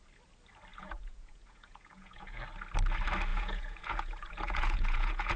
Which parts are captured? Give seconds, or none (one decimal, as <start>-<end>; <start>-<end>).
0.0-0.7; 2.4-3.3